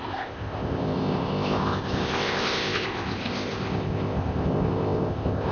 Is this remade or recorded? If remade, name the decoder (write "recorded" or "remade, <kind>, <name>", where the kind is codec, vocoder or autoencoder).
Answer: remade, codec, ZipCodec